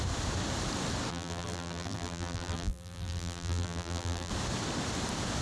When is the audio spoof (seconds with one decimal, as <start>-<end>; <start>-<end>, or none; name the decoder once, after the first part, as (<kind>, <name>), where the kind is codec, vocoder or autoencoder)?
1.1-4.3 (vocoder, BigVGAN v2)